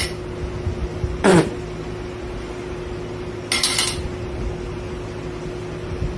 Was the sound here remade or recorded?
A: recorded